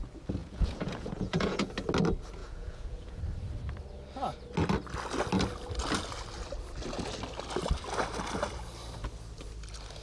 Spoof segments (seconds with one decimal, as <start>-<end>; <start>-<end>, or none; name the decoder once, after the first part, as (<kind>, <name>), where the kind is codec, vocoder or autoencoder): 0.4-1.7 (vocoder, Vocos); 2.4-3.2